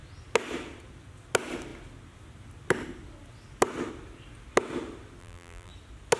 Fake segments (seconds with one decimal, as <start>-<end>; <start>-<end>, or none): 5.2-5.7